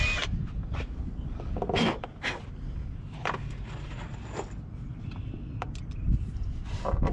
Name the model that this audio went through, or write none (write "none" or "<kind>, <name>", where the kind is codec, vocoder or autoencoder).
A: none